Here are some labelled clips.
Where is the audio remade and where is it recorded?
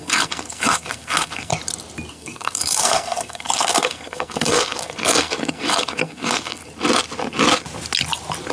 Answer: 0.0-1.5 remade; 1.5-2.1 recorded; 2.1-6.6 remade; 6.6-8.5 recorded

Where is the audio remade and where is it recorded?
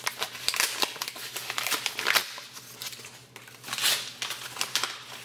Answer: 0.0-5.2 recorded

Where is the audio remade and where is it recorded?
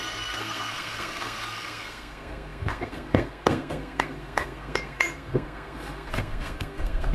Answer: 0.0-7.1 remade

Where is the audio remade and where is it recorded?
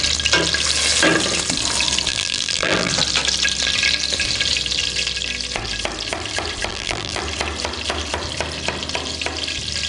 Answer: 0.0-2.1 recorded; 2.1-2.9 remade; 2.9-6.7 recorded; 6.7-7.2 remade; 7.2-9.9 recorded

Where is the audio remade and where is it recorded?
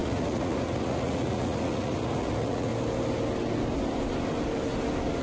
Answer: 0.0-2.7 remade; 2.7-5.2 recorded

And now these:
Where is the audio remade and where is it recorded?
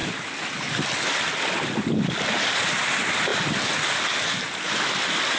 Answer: 0.0-5.4 recorded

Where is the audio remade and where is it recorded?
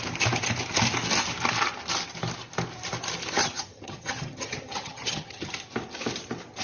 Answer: 0.0-3.4 recorded; 3.4-5.5 remade; 5.5-6.6 recorded